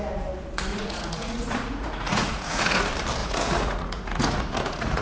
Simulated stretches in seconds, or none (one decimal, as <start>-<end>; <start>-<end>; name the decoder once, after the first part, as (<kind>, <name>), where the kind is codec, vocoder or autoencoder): 0.7-2.8 (vocoder, Vocos); 3.2-5.0